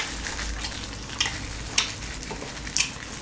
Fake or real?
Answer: real